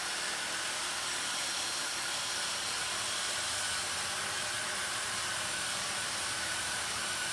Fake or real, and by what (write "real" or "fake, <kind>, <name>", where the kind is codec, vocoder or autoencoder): fake, vocoder, BigVGAN v2